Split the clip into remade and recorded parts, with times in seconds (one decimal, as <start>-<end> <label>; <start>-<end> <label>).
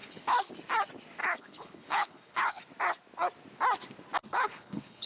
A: 0.0-0.5 remade; 0.5-1.2 recorded; 1.2-2.6 remade; 2.6-4.2 recorded; 4.2-5.1 remade